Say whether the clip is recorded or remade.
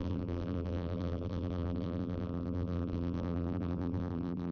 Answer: remade